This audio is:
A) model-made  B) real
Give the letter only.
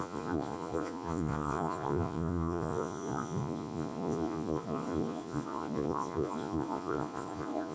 A